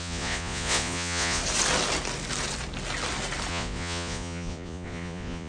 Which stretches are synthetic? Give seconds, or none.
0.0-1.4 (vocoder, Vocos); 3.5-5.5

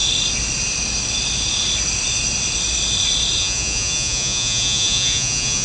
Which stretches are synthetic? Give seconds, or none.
3.4-5.6 (vocoder, Vocos)

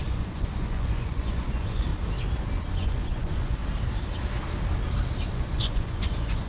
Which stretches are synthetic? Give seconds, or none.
0.0-1.9 (vocoder, Vocos); 2.7-3.6; 5.3-6.5

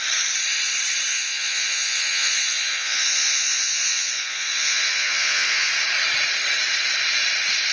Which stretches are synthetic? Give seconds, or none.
1.1-5.7 (vocoder, Vocos)